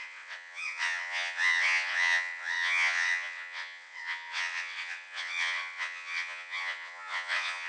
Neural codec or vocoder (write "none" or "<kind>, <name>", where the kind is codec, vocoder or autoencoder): vocoder, WaveNeXt